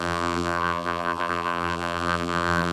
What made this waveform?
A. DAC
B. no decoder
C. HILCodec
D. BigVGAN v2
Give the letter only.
D